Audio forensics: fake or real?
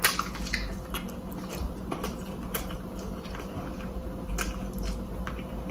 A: real